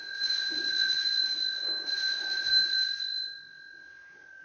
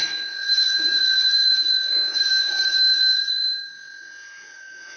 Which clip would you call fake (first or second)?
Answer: second